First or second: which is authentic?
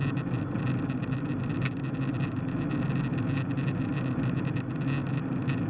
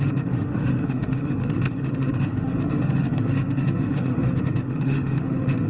first